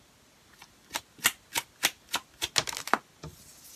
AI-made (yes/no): no